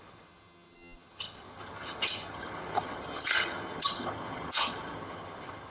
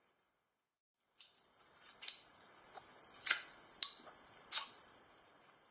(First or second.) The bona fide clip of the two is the second